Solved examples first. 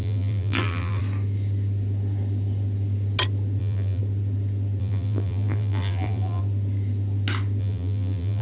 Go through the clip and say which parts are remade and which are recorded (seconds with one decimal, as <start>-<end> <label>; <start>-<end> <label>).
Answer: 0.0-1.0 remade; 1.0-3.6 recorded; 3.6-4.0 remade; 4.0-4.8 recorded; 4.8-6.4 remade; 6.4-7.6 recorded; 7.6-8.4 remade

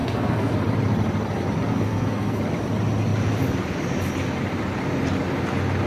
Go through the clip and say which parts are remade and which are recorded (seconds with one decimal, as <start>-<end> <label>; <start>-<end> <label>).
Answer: 0.0-0.5 remade; 0.5-1.7 recorded; 1.7-2.4 remade; 2.4-5.9 recorded

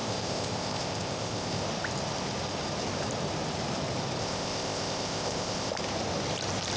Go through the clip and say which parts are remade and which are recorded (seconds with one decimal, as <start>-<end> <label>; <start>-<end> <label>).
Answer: 0.0-1.6 remade; 1.6-4.2 recorded; 4.2-5.7 remade; 5.7-6.8 recorded

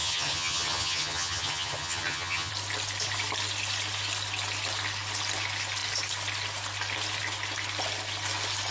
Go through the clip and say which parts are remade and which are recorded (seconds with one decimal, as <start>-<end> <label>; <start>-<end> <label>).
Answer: 0.0-2.5 remade; 2.5-8.7 recorded

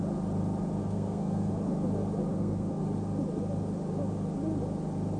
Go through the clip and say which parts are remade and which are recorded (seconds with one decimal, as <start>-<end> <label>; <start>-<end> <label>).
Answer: 0.0-0.8 recorded; 0.8-1.5 remade; 1.5-2.3 recorded; 2.3-2.8 remade; 2.8-5.2 recorded